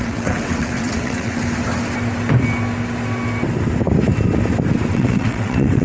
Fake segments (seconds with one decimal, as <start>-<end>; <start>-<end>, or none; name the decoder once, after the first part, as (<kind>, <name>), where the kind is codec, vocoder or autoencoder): 0.0-1.4 (vocoder, WaveNeXt); 4.9-5.8